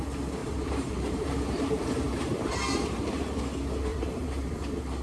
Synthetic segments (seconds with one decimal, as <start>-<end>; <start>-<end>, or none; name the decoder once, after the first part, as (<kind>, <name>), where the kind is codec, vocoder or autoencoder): 0.4-3.4 (vocoder, BigVGAN v2); 3.9-4.5